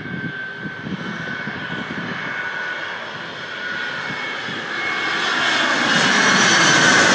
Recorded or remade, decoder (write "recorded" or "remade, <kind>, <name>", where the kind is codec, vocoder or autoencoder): recorded